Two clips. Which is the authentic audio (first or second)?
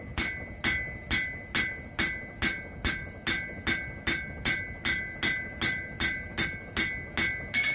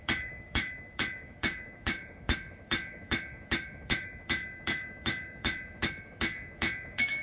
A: first